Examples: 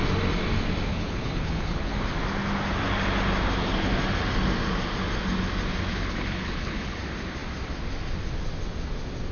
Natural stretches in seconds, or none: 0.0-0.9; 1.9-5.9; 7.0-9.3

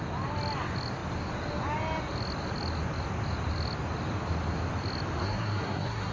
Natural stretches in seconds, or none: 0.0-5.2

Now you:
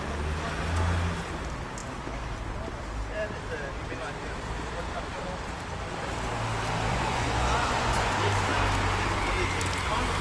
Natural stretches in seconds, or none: 0.0-6.9; 8.1-10.2

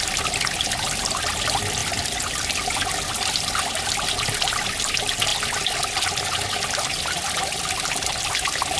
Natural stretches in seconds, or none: 0.0-8.8